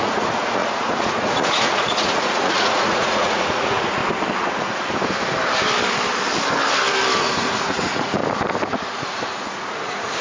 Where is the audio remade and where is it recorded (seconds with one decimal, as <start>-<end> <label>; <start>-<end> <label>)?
0.0-4.0 remade; 4.0-7.2 recorded; 7.2-8.2 remade; 8.2-8.7 recorded; 8.7-10.2 remade